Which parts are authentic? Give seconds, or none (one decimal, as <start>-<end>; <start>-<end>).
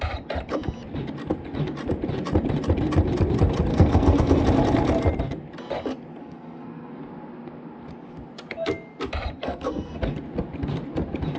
0.0-3.7; 4.4-6.2; 7.0-9.4; 10.0-11.4